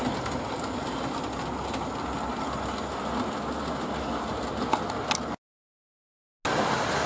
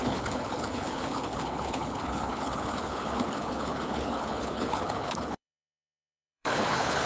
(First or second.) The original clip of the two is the first